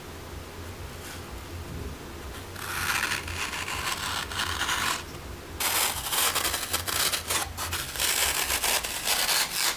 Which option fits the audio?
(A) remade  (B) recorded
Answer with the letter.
B